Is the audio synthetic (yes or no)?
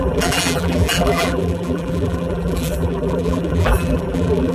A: yes